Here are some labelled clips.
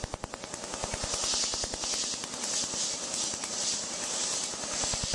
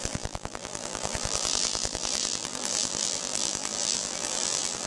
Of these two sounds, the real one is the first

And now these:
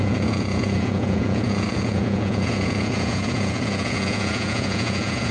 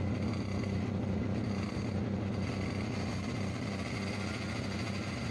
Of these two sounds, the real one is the second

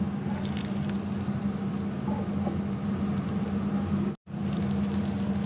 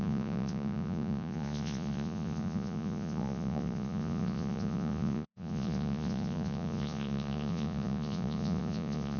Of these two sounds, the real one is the first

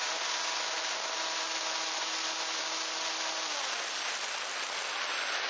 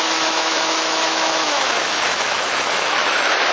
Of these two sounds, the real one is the first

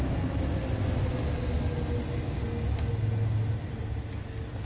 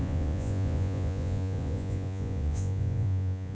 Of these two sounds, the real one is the first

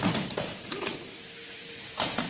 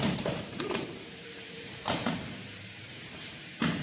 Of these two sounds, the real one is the first